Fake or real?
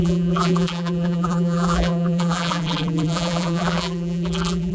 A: fake